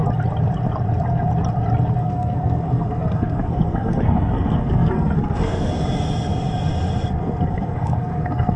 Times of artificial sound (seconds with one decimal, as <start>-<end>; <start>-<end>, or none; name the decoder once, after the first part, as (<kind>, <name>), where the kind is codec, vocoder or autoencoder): 2.0-5.7 (codec, SNAC); 7.2-8.6

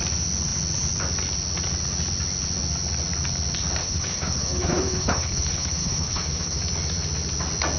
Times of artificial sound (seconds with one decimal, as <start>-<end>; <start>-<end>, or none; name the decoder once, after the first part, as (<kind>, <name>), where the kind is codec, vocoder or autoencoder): 3.8-6.6 (codec, HILCodec)

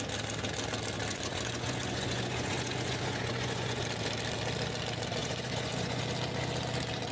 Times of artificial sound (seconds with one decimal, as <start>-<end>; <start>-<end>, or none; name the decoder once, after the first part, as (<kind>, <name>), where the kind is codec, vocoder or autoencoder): 1.1-3.8 (vocoder, Vocos); 5.2-6.0